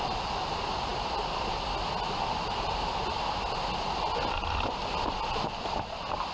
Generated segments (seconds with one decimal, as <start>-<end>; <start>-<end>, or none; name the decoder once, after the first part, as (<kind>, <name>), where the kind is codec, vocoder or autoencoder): none

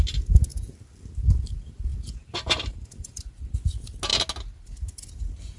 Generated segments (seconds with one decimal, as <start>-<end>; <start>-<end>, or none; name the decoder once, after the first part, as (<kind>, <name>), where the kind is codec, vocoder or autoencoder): 1.9-3.3 (vocoder, BigVGAN v2)